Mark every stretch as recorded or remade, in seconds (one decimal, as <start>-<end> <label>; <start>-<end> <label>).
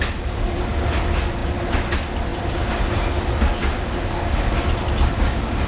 0.0-5.7 recorded